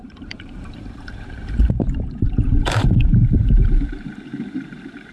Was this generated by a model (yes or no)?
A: yes